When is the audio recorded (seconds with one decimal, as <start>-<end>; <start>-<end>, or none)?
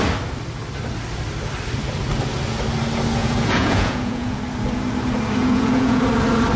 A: 0.0-3.2; 4.4-5.4; 6.0-6.6